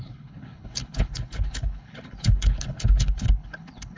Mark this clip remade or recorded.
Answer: remade